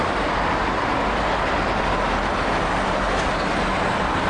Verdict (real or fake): real